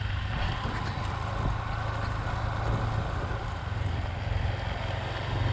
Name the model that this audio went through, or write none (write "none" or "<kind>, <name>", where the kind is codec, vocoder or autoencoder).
none